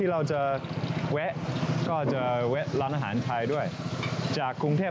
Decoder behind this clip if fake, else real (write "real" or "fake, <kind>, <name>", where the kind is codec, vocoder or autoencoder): real